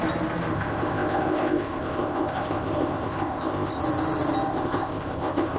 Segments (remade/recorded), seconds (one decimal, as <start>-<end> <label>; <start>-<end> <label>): 0.0-0.5 recorded; 0.5-3.8 remade; 3.8-4.5 recorded; 4.5-5.6 remade